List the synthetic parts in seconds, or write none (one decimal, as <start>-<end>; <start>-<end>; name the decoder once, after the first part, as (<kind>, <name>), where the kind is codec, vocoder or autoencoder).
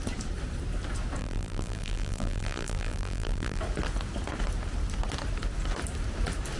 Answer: 1.2-3.6 (vocoder, BigVGAN v2)